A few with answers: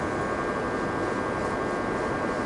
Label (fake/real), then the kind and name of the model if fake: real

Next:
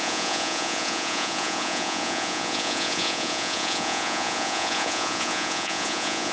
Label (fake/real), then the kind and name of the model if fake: fake, vocoder, Vocos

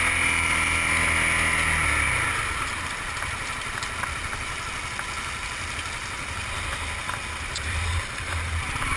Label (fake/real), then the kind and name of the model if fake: real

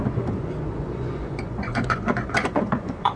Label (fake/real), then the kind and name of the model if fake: fake, vocoder, Vocos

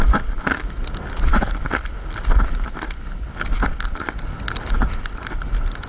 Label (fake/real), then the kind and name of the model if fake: real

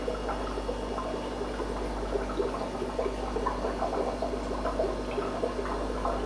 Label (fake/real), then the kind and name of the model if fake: real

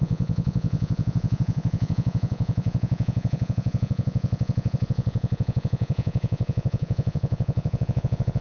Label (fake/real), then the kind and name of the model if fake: fake, vocoder, Vocos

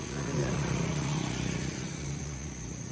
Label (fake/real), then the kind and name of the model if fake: fake, vocoder, Vocos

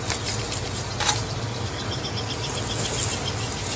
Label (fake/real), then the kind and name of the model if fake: real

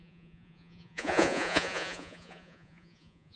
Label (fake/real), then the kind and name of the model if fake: fake, vocoder, Vocos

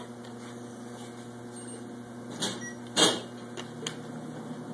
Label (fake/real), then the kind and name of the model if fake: real